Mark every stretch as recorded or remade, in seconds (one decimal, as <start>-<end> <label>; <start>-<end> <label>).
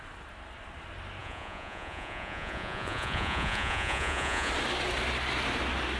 0.0-1.2 recorded; 1.2-4.5 remade; 4.5-6.0 recorded